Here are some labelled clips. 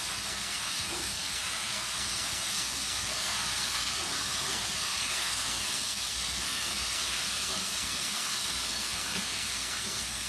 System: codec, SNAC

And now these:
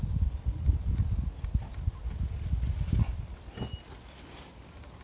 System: none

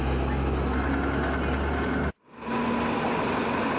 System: none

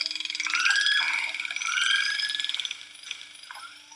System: none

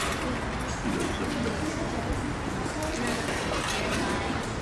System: none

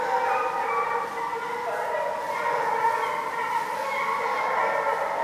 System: none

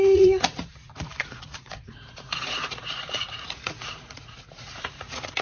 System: vocoder, Vocos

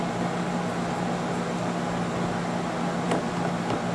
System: none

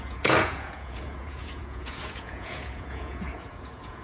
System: vocoder, Vocos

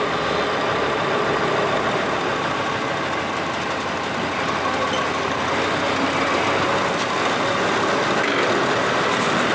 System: none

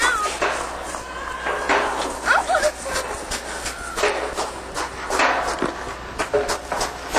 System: none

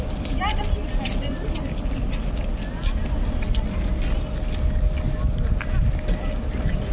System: none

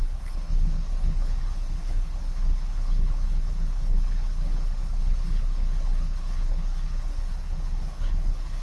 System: codec, HILCodec